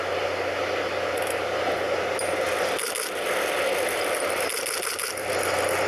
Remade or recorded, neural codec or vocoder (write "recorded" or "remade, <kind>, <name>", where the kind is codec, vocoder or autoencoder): recorded